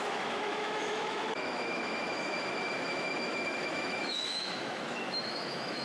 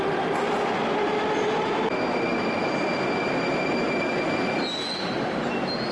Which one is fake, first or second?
first